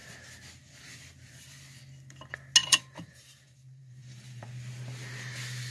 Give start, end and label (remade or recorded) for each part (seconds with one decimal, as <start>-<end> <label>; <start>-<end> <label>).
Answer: 0.0-2.6 recorded; 2.6-4.5 remade; 4.5-5.7 recorded

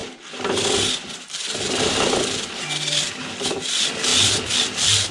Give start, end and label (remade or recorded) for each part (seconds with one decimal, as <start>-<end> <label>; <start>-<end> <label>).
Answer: 0.0-3.1 remade; 3.1-4.1 recorded; 4.1-5.1 remade

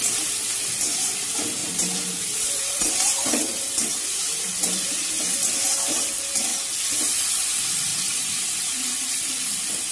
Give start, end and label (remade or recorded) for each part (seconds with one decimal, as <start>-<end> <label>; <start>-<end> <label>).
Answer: 0.0-1.6 recorded; 1.6-4.5 remade; 4.5-7.9 recorded; 7.9-9.1 remade; 9.1-9.9 recorded

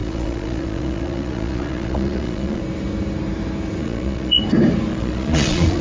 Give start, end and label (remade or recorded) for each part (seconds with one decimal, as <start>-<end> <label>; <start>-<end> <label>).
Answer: 0.0-2.6 remade; 2.6-3.8 recorded; 3.8-4.4 remade; 4.4-4.9 recorded; 4.9-5.8 remade

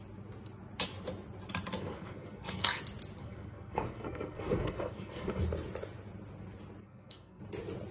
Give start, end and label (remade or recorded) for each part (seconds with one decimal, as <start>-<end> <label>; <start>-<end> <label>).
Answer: 0.0-1.8 recorded; 1.8-2.8 remade; 2.8-3.2 recorded; 3.2-5.4 remade; 5.4-6.8 recorded; 6.8-7.4 remade; 7.4-7.9 recorded

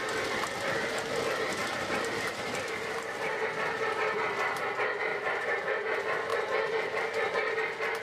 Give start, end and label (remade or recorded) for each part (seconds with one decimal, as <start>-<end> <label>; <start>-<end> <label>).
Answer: 0.0-1.6 recorded; 1.6-3.3 remade; 3.3-5.1 recorded; 5.1-5.7 remade; 5.7-6.3 recorded; 6.3-7.0 remade; 7.0-8.0 recorded